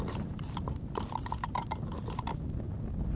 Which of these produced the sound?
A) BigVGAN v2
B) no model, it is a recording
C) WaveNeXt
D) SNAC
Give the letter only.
B